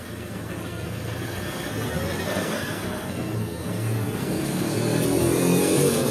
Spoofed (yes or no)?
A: yes